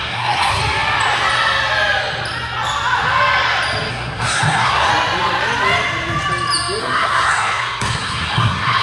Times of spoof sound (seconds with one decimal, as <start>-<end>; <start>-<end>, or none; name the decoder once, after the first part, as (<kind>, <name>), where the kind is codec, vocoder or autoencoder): 0.0-0.6 (codec, SNAC); 3.9-4.9; 6.8-8.8